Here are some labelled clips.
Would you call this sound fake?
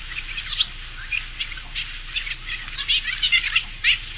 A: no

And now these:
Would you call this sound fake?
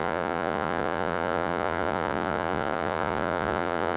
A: yes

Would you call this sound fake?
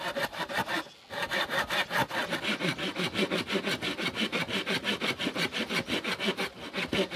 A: no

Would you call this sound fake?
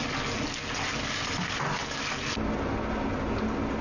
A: no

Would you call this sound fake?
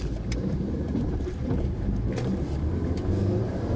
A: yes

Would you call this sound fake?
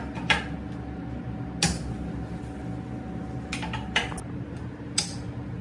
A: no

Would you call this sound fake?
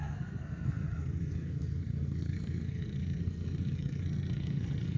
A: yes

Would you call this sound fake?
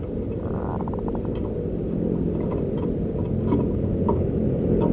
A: no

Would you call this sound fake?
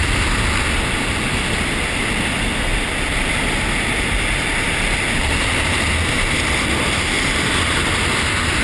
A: no